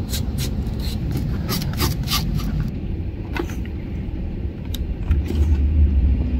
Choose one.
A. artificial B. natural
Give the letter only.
A